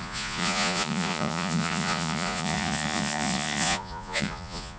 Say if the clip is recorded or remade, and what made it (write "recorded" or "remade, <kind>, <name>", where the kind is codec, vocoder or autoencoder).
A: remade, vocoder, Vocos